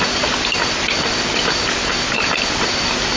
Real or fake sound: real